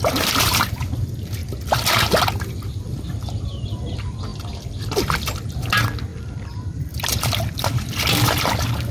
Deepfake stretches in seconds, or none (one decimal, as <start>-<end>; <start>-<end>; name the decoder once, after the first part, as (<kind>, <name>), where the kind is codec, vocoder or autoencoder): 4.3-5.6 (vocoder, BigVGAN v2); 6.1-8.5